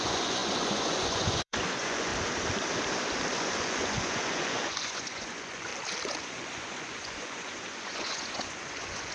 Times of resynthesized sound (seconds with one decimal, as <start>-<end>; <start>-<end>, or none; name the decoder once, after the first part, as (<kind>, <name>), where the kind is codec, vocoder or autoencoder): 0.0-2.1 (vocoder, Vocos); 3.4-5.7; 6.2-9.1